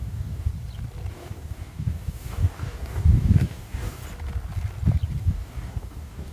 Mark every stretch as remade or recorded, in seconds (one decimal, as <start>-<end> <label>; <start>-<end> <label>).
0.0-0.5 remade; 0.5-1.1 recorded; 1.1-4.0 remade; 4.0-5.2 recorded; 5.2-6.3 remade